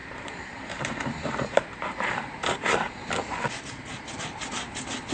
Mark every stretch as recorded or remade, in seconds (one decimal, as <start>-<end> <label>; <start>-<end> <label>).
0.0-3.1 remade; 3.1-5.1 recorded